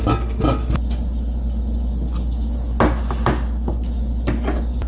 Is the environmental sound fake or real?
real